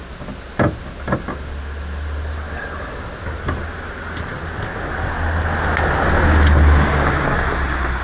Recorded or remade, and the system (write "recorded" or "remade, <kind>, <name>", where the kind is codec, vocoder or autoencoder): recorded